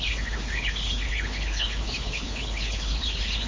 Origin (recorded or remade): remade